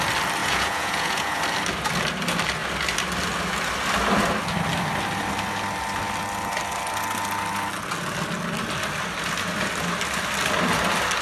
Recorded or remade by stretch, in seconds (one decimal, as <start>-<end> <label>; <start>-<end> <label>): 0.0-0.4 recorded; 0.4-1.4 remade; 1.4-11.2 recorded